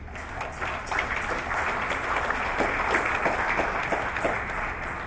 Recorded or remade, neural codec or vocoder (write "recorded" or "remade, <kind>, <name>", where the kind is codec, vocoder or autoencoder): recorded